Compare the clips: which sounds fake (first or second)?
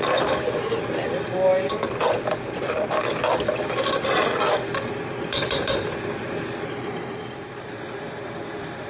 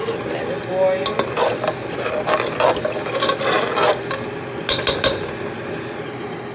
first